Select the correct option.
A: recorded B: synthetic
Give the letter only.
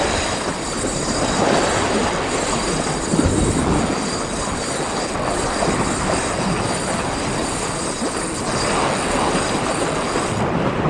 A